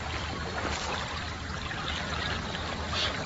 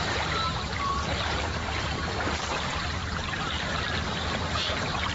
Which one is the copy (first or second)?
second